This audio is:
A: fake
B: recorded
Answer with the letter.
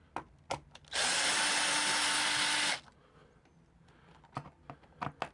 B